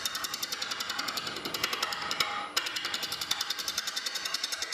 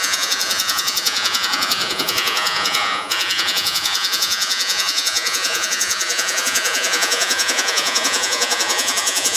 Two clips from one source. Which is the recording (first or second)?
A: first